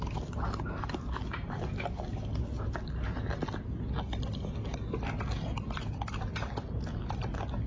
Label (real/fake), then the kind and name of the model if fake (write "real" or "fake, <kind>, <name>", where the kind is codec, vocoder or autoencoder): real